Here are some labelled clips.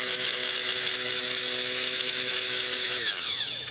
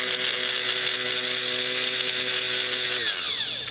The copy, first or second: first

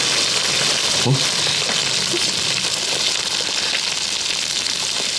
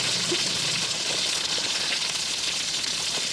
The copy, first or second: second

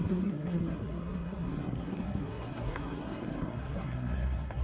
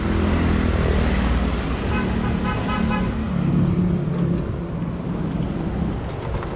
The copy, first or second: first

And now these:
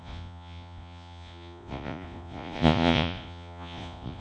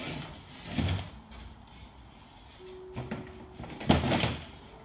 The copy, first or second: first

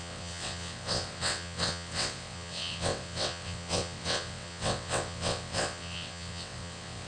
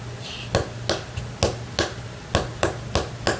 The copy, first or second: first